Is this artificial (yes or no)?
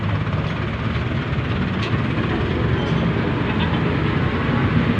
no